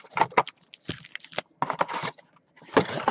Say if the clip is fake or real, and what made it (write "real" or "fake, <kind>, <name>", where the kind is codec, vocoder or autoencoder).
real